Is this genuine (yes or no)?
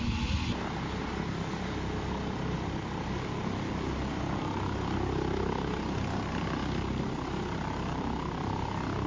yes